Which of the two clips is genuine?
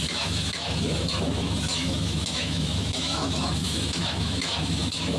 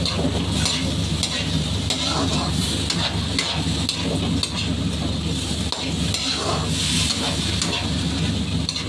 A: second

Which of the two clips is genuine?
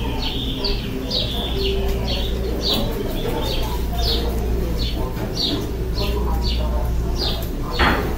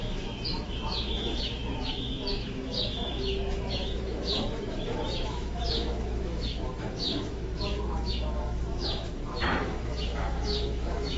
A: first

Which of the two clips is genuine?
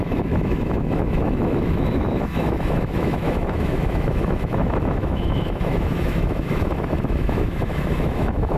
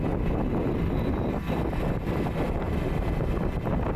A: second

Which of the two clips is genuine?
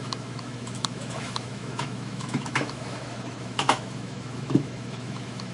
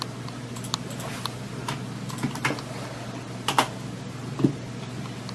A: second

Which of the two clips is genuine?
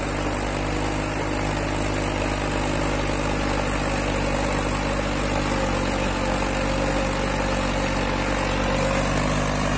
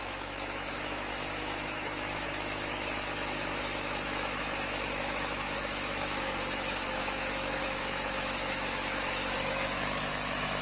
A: first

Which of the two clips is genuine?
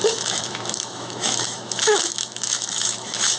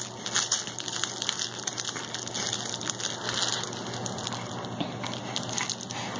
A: second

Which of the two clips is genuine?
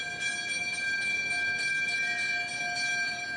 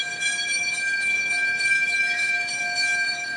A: first